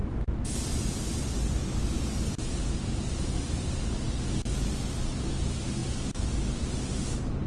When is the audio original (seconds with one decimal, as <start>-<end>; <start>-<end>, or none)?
0.0-7.5

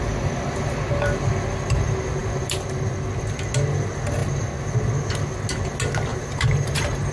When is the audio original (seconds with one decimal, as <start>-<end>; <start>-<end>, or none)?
0.0-6.1

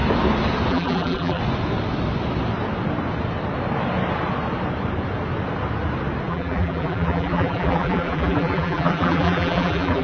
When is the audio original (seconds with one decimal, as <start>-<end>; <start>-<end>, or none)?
0.0-0.7; 1.4-6.3

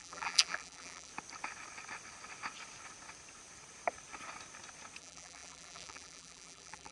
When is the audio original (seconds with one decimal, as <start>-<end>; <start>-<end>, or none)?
1.1-5.0